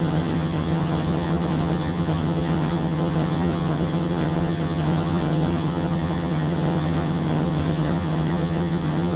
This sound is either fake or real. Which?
fake